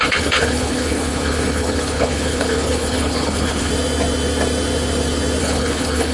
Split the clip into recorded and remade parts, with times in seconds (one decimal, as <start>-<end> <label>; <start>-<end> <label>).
0.0-3.7 remade; 3.7-5.4 recorded; 5.4-6.1 remade